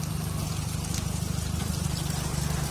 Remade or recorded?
remade